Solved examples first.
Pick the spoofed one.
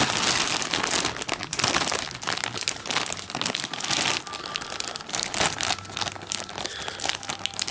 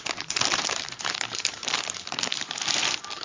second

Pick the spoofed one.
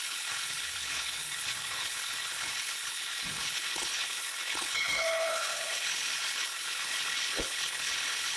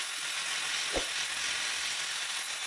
first